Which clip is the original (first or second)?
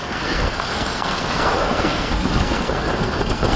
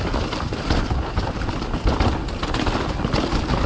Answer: second